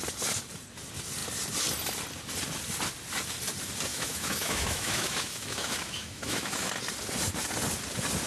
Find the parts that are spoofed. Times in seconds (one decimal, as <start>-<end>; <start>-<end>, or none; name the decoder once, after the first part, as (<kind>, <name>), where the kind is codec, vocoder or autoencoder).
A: 3.9-6.7 (autoencoder, DAC-VAE)